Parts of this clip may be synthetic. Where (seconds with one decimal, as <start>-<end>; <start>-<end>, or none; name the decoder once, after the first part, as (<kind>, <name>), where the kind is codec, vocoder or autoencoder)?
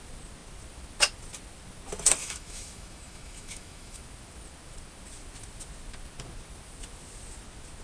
2.2-4.0 (autoencoder, DAC-VAE)